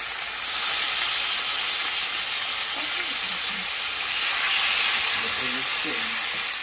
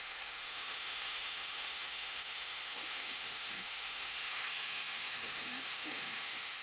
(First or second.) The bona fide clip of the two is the first